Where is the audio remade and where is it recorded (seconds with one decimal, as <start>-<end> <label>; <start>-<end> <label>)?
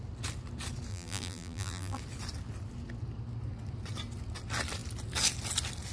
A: 0.0-0.9 recorded; 0.9-2.0 remade; 2.0-5.9 recorded